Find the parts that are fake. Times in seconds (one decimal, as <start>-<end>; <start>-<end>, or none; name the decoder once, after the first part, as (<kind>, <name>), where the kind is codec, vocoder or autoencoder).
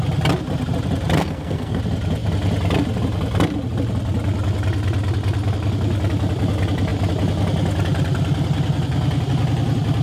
1.2-1.8 (codec, SNAC)